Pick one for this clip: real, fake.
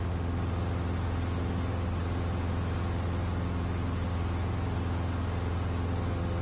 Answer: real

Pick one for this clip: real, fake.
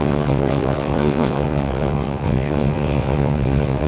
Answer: fake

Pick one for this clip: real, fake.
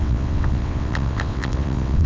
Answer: fake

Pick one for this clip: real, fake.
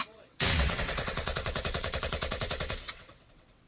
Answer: fake